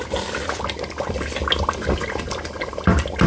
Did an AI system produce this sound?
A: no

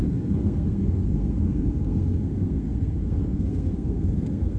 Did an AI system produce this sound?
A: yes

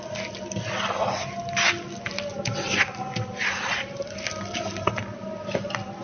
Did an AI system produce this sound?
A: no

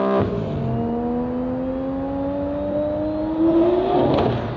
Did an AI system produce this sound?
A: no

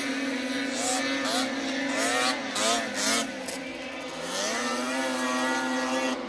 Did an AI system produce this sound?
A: no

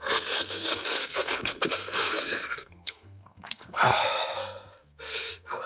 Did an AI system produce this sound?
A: yes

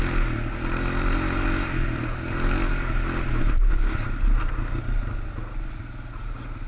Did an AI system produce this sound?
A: no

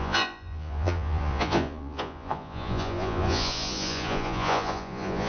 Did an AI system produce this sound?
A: yes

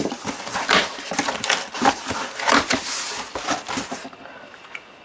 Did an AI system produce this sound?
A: no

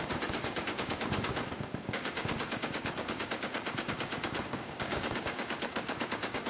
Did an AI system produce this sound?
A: yes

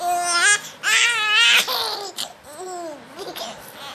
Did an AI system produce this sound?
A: no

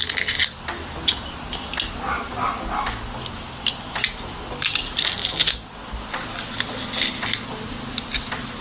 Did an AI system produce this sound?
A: no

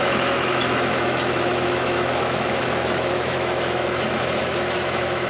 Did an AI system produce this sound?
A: yes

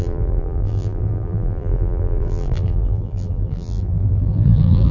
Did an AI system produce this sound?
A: yes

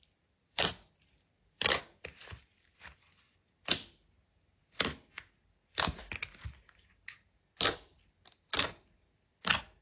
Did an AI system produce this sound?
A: no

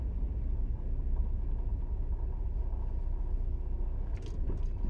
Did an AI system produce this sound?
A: no